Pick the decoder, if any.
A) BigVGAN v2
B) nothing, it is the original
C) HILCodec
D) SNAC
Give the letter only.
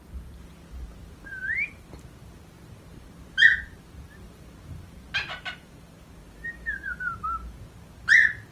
B